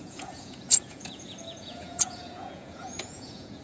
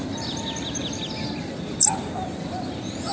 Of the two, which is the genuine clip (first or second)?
second